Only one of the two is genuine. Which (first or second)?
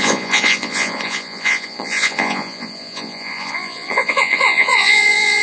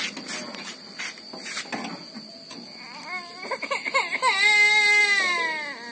second